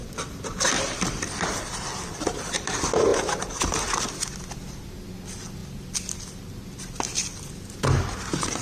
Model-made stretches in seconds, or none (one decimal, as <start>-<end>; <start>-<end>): 0.0-2.2